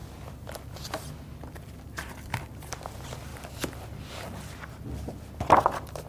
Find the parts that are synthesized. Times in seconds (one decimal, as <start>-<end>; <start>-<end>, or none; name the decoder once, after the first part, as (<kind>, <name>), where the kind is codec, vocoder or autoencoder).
none